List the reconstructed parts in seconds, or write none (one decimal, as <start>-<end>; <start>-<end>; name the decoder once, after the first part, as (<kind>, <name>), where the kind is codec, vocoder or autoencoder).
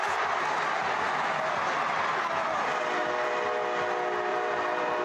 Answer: 4.3-5.0 (vocoder, BigVGAN v2)